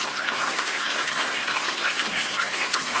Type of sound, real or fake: fake